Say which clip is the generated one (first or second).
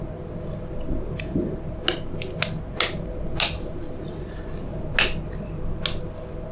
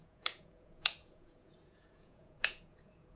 second